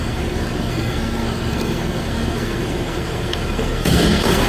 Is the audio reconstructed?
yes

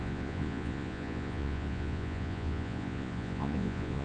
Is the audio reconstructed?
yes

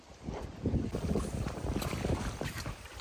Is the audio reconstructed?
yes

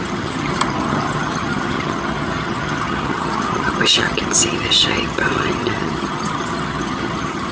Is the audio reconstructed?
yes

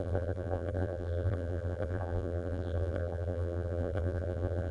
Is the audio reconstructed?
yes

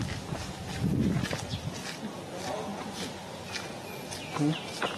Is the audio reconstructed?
no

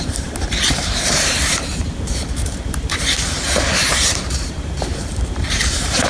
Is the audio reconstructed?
yes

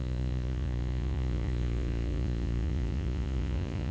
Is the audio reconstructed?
yes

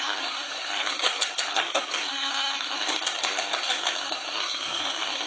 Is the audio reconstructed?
yes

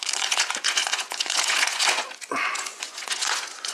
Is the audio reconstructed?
yes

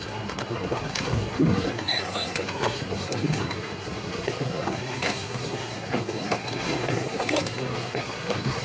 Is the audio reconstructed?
yes